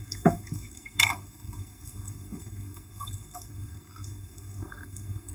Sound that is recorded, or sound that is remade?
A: remade